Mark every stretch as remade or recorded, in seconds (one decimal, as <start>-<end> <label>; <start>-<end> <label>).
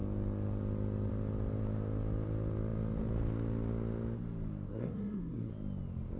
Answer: 0.0-4.7 recorded; 4.7-5.5 remade; 5.5-6.2 recorded